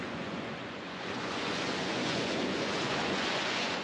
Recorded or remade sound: remade